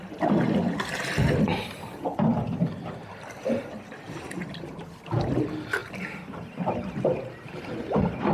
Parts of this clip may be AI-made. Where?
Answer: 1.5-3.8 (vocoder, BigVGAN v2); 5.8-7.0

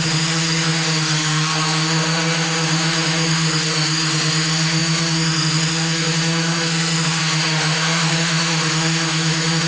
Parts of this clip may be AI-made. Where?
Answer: 0.0-9.7 (autoencoder, DAC-VAE)